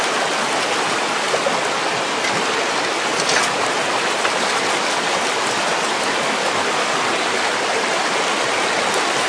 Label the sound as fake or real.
real